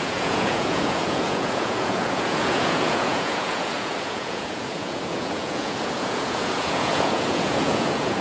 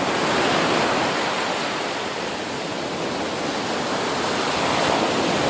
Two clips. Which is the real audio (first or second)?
second